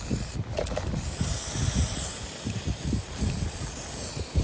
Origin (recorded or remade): recorded